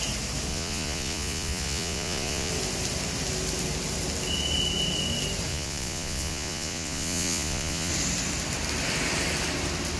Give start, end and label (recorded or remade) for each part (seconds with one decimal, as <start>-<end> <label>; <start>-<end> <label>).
0.0-0.5 recorded; 0.5-2.5 remade; 2.5-5.5 recorded; 5.5-7.9 remade; 7.9-10.0 recorded